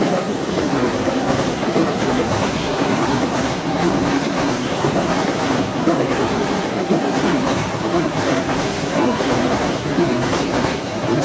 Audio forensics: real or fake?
fake